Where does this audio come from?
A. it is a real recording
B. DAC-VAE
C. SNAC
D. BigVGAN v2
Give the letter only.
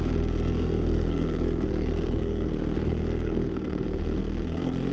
C